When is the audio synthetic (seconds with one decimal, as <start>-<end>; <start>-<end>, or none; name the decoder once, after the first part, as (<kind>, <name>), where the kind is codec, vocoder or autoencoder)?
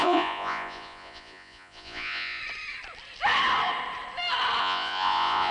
0.0-2.4 (vocoder, Vocos); 4.6-5.5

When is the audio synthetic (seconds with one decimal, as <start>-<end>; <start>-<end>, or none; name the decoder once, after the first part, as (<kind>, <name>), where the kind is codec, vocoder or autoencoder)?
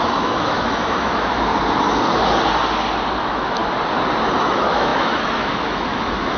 0.0-1.5 (autoencoder, DAC-VAE); 3.2-3.6; 4.4-6.4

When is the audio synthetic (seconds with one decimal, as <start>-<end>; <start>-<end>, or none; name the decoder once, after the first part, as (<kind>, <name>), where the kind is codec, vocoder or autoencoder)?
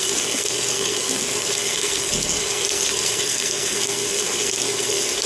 0.0-5.3 (codec, SNAC)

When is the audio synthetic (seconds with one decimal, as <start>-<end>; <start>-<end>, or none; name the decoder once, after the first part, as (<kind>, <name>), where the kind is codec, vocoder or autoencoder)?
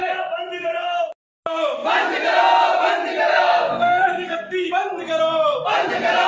3.3-4.7 (codec, SNAC)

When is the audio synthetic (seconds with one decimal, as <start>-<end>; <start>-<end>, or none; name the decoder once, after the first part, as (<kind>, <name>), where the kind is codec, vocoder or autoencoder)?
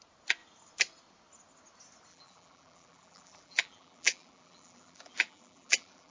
2.1-6.1 (vocoder, BigVGAN v2)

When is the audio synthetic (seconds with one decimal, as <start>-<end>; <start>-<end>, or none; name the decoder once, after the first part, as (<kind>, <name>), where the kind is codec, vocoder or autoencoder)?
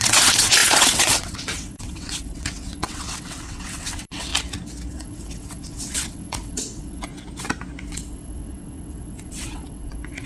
0.0-4.3 (vocoder, WaveNeXt); 4.9-7.1; 7.9-10.3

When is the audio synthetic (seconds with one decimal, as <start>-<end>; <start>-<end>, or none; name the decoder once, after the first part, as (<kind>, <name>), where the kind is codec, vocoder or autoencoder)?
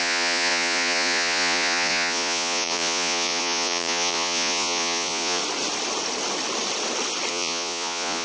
0.0-5.4 (vocoder, Vocos); 7.3-8.2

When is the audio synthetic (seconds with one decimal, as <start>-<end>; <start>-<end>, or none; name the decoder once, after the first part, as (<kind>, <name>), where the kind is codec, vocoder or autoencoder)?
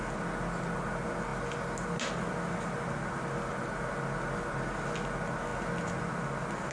none